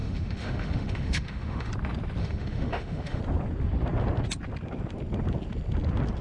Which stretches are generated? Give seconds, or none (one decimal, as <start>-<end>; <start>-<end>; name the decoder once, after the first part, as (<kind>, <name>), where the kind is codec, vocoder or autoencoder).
0.0-1.7 (autoencoder, DAC-VAE); 2.2-3.2